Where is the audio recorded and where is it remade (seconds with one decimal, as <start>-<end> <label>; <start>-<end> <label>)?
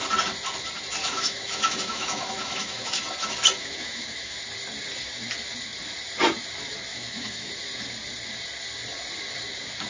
0.0-1.0 recorded; 1.0-3.0 remade; 3.0-3.6 recorded; 3.6-4.4 remade; 4.4-6.9 recorded; 6.9-7.5 remade; 7.5-9.9 recorded